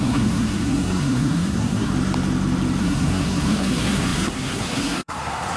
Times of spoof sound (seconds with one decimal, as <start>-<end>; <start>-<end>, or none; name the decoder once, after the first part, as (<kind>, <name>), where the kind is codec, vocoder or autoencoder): 0.0-1.9 (codec, SNAC); 2.8-5.6